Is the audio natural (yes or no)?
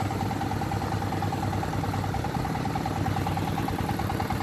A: yes